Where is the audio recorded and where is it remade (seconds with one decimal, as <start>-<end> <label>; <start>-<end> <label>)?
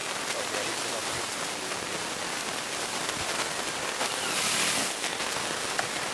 0.0-4.8 recorded; 4.8-5.3 remade; 5.3-6.1 recorded